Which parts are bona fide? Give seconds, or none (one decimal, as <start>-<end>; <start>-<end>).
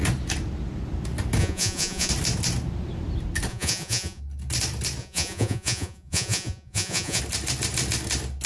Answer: 0.0-1.4; 2.1-3.5; 4.2-5.0; 7.2-8.5